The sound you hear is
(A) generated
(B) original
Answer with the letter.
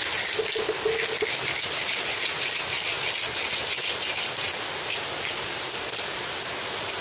B